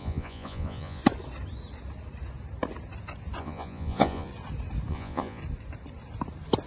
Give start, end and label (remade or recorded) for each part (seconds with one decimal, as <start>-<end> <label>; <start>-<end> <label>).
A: 0.0-1.0 remade; 1.0-3.4 recorded; 3.4-4.3 remade; 4.3-4.9 recorded; 4.9-5.4 remade; 5.4-6.7 recorded